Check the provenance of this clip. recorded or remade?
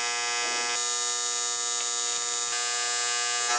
recorded